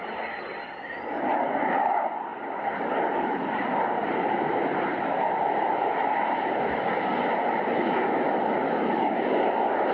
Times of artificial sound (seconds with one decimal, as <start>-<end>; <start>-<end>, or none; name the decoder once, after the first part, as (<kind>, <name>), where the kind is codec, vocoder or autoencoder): none

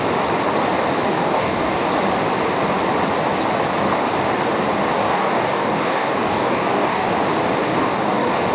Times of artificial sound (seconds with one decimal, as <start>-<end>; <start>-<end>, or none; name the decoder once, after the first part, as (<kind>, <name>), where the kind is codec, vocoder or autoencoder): 1.1-1.9 (codec, DAC); 5.0-7.1; 7.7-8.5